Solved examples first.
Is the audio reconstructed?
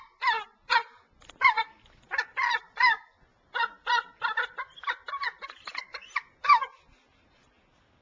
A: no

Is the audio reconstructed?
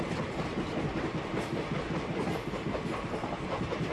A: no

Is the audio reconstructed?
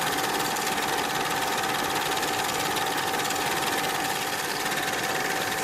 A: no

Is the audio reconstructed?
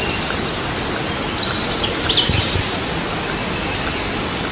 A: no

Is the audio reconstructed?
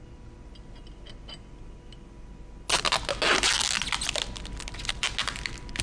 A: no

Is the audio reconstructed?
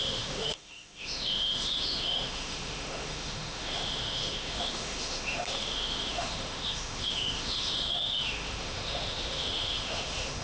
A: yes